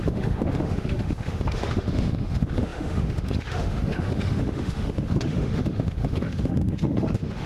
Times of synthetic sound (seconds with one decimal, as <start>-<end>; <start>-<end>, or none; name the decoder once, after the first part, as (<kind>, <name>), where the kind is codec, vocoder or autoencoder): 0.0-7.5 (autoencoder, DAC-VAE)